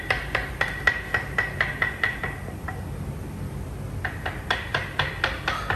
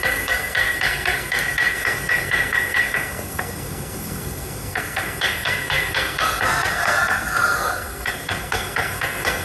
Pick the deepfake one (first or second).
second